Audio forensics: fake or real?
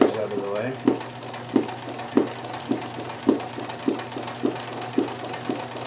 real